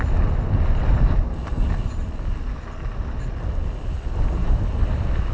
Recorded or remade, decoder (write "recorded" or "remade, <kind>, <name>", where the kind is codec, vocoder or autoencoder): recorded